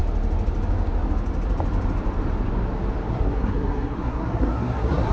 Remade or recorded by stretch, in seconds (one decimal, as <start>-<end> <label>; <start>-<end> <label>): 0.0-3.1 recorded; 3.1-5.1 remade